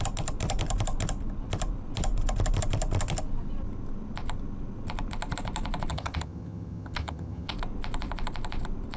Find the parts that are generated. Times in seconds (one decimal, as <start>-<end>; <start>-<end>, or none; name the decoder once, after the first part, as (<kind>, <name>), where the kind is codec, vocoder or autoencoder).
5.9-7.5 (vocoder, HiFi-GAN)